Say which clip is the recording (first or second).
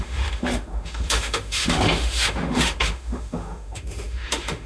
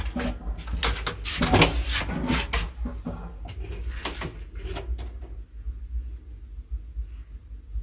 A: second